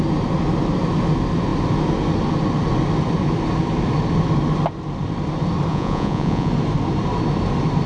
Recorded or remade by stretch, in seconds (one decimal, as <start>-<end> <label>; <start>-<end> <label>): 0.0-5.7 recorded; 5.7-6.5 remade; 6.5-7.9 recorded